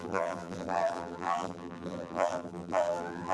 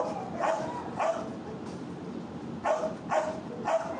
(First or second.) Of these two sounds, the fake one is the first